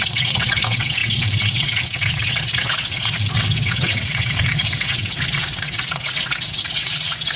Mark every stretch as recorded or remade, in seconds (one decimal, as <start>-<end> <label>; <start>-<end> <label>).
0.0-7.4 remade

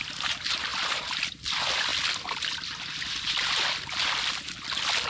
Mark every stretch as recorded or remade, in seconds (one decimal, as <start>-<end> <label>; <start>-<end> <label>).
0.0-1.9 remade; 1.9-5.1 recorded

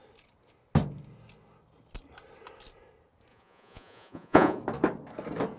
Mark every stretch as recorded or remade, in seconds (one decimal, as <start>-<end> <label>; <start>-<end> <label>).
0.0-3.3 recorded; 3.3-4.6 remade; 4.6-5.6 recorded

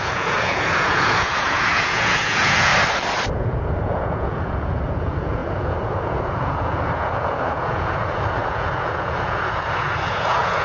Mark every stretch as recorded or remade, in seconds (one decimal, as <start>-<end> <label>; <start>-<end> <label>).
0.0-2.7 remade; 2.7-3.3 recorded; 3.3-10.6 remade

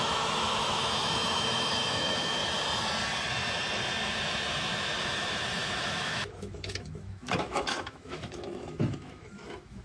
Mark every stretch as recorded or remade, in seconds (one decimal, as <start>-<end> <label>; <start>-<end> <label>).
0.0-2.4 remade; 2.4-5.0 recorded; 5.0-9.8 remade

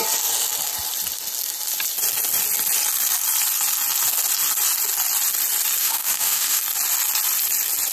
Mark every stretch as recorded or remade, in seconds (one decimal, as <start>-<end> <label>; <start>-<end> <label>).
0.0-5.8 recorded; 5.8-6.6 remade; 6.6-7.9 recorded

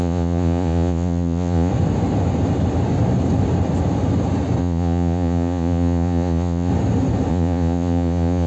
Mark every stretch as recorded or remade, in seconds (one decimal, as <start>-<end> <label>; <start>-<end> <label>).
0.0-1.7 remade; 1.7-4.6 recorded; 4.6-6.7 remade; 6.7-7.3 recorded; 7.3-8.5 remade

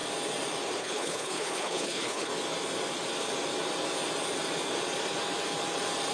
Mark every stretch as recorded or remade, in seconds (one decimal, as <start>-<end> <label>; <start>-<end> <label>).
0.0-0.8 recorded; 0.8-2.3 remade; 2.3-6.1 recorded